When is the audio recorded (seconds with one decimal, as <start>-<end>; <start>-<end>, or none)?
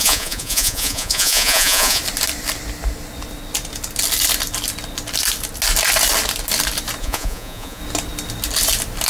2.0-7.0; 7.8-9.1